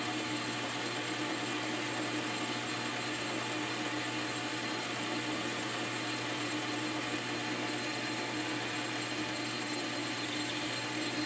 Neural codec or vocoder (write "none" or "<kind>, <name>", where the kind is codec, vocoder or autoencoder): none